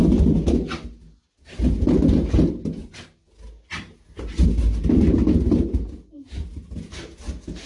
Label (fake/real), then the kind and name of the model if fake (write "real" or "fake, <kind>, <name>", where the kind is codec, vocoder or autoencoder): real